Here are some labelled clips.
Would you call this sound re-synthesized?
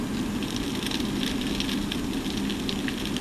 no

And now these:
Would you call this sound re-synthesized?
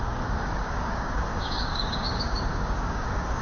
yes